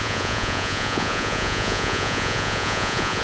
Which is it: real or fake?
fake